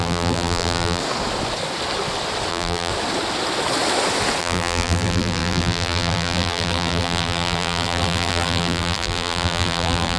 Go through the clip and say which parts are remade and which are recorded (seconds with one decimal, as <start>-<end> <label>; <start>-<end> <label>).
0.0-1.0 remade; 1.0-2.5 recorded; 2.5-2.9 remade; 2.9-4.4 recorded; 4.4-10.2 remade